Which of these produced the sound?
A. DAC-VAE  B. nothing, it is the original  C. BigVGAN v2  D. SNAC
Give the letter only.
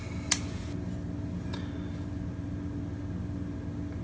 B